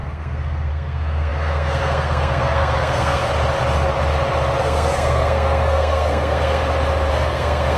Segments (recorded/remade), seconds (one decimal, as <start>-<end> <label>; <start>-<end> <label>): 0.0-3.2 remade; 3.2-4.6 recorded; 4.6-6.6 remade; 6.6-7.1 recorded; 7.1-7.8 remade